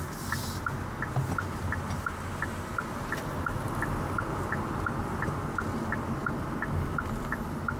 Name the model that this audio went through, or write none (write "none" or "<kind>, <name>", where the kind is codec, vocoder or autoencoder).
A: none